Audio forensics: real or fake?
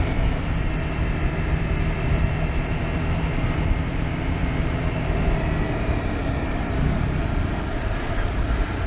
fake